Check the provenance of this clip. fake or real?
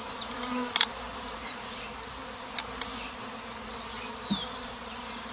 fake